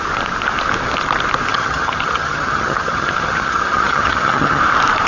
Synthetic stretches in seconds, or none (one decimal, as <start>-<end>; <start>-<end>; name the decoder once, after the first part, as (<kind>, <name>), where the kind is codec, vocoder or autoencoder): 1.5-4.6 (vocoder, HiFi-GAN)